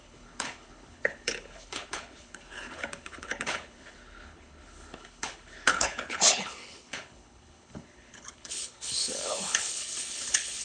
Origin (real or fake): fake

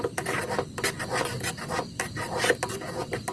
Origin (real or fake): real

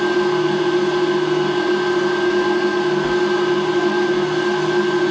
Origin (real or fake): real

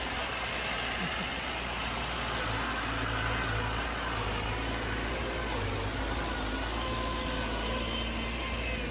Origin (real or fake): real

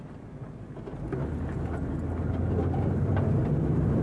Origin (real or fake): real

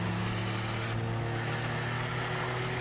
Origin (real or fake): real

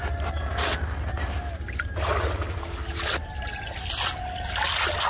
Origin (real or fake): real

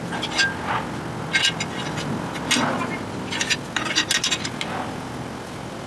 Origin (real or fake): real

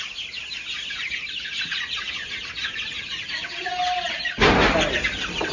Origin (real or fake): real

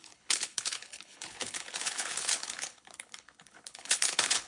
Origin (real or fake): fake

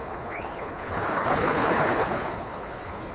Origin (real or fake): fake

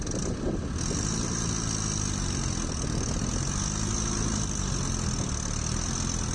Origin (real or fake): real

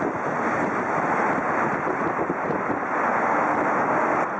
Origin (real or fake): real